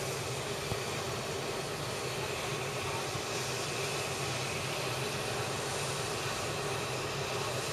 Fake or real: real